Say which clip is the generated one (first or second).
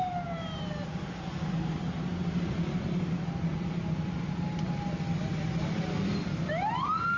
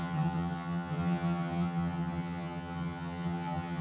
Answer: second